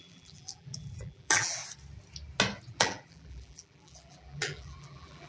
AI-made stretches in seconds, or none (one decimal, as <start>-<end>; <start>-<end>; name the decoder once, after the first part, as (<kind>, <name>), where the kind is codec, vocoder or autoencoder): 0.0-1.6 (vocoder, BigVGAN v2); 2.7-5.3